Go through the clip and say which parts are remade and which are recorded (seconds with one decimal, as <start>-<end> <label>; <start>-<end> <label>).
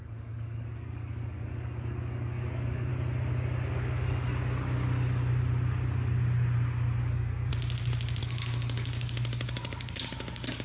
0.0-2.9 remade; 2.9-3.7 recorded; 3.7-4.3 remade; 4.3-7.0 recorded; 7.0-7.5 remade; 7.5-8.2 recorded; 8.2-10.6 remade